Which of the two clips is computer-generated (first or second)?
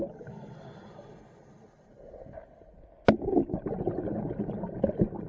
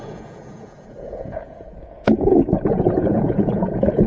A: second